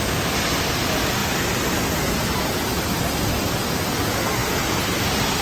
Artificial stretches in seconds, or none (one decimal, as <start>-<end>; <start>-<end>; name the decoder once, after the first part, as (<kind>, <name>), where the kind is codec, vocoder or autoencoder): 1.2-1.7 (vocoder, BigVGAN v2)